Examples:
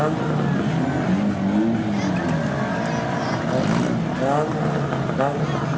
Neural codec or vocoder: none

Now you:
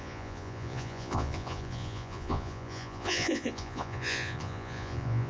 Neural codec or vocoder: vocoder, Vocos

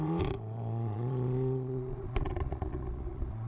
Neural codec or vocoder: vocoder, Vocos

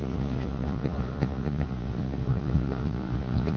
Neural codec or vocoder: vocoder, Vocos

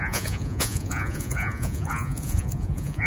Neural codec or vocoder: vocoder, Vocos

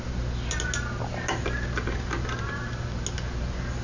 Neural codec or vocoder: none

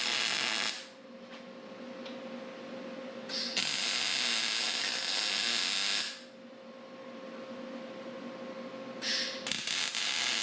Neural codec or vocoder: none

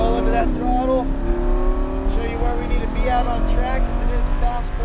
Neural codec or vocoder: none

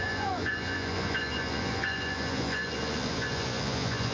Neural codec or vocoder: vocoder, Vocos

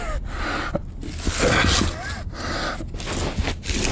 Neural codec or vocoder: none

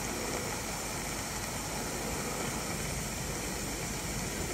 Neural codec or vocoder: none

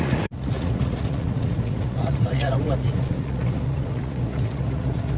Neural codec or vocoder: vocoder, Vocos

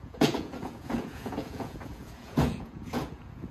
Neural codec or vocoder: vocoder, Vocos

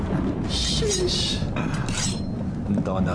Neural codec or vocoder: none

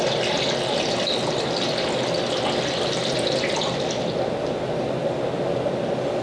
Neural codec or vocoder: none